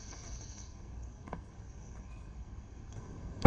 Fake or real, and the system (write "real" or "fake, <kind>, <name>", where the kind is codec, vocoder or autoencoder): fake, codec, SNAC